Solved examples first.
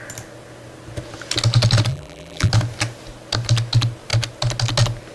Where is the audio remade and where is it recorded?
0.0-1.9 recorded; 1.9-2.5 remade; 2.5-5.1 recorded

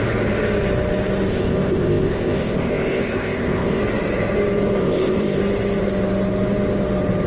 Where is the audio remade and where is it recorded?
0.0-1.3 recorded; 1.3-3.8 remade; 3.8-4.8 recorded; 4.8-5.4 remade; 5.4-7.3 recorded

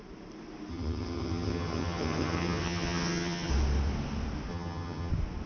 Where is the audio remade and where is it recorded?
0.0-0.7 recorded; 0.7-3.5 remade; 3.5-4.5 recorded; 4.5-5.1 remade; 5.1-5.5 recorded

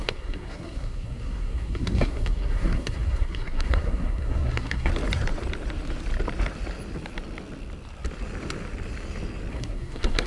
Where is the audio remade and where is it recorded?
0.0-4.9 remade; 4.9-9.5 recorded; 9.5-10.3 remade

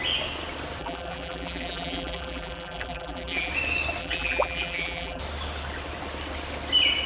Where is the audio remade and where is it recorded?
0.0-0.8 recorded; 0.8-3.5 remade; 3.5-4.0 recorded; 4.0-5.2 remade; 5.2-7.1 recorded